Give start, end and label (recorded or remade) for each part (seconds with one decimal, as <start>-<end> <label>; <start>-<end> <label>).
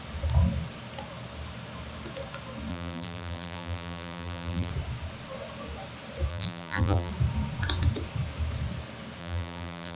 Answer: 0.0-2.7 recorded; 2.7-4.7 remade; 4.7-6.3 recorded; 6.3-7.1 remade; 7.1-9.2 recorded; 9.2-10.0 remade